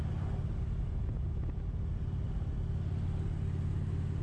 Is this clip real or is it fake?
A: real